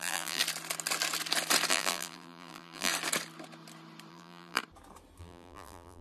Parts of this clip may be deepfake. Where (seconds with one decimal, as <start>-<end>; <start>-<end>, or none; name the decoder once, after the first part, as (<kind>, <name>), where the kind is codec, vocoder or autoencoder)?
0.0-0.4 (vocoder, BigVGAN v2); 1.7-2.9; 4.1-4.6; 5.2-6.0